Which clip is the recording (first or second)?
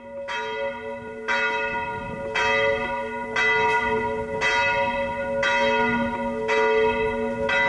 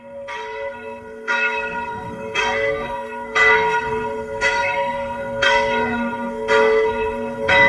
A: first